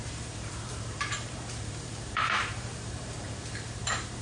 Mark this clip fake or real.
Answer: fake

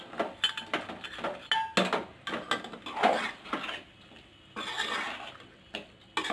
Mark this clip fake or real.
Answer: real